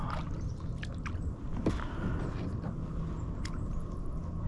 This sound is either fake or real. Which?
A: real